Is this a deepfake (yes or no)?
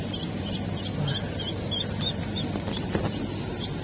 no